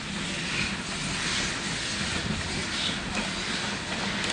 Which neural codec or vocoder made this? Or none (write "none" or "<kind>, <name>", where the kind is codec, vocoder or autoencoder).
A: none